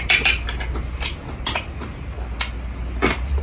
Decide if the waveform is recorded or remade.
recorded